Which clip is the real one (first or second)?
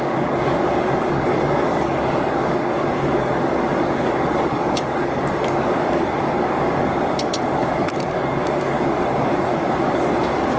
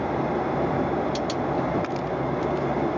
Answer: second